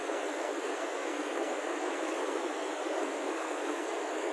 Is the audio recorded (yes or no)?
no